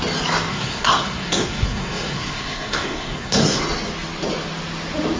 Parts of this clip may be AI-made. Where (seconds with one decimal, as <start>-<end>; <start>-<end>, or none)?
0.5-3.6